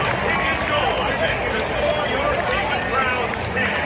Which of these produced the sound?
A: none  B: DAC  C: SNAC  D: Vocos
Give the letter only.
A